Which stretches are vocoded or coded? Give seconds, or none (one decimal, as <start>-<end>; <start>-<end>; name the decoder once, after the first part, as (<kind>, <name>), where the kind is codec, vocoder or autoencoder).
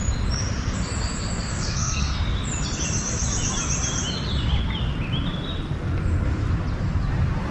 1.5-2.2 (codec, SNAC)